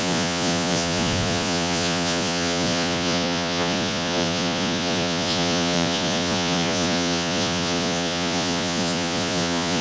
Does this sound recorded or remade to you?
remade